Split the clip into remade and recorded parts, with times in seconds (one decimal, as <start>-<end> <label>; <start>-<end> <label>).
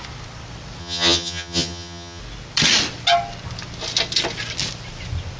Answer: 0.0-0.8 recorded; 0.8-2.2 remade; 2.2-5.4 recorded